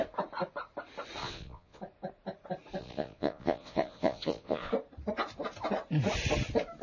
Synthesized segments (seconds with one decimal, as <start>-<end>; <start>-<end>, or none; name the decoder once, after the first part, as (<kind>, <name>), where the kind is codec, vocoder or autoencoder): 1.2-1.8 (vocoder, Vocos); 2.8-4.7